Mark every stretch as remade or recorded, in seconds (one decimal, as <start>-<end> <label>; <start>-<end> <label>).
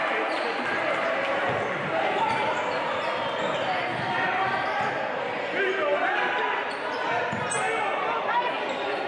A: 0.0-9.1 recorded